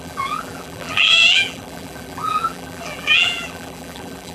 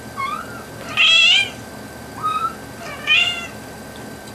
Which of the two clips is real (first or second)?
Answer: second